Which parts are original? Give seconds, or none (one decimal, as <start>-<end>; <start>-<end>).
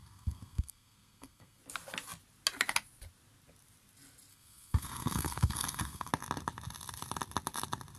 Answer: 1.6-4.3; 6.1-8.0